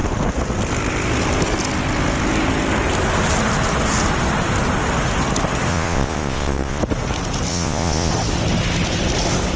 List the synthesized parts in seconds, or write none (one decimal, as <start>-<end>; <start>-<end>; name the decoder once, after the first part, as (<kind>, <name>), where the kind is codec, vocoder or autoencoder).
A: 5.7-6.8 (vocoder, Vocos); 7.5-8.1